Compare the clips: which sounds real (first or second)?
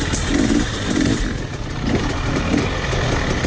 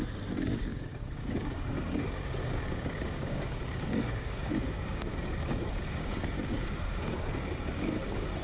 first